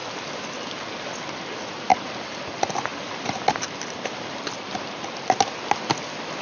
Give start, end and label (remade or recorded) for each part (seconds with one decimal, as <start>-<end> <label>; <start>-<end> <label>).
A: 0.0-1.9 recorded; 1.9-2.4 remade; 2.4-2.9 recorded; 2.9-4.6 remade; 4.6-6.4 recorded